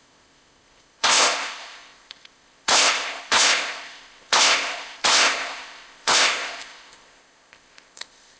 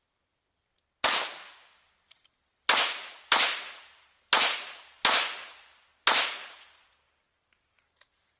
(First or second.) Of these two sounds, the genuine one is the second